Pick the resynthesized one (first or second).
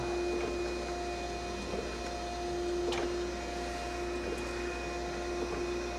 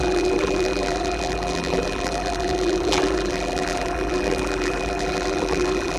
second